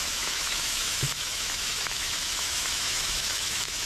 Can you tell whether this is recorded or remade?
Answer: remade